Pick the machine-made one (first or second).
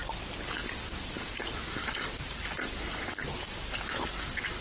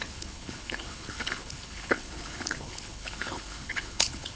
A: second